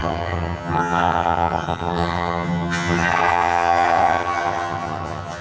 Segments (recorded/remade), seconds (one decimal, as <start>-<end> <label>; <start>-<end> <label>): 0.0-5.4 remade